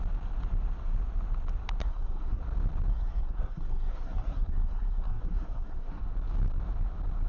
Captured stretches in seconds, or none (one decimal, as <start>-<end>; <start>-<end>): 0.0-1.8; 2.4-2.9; 6.0-7.3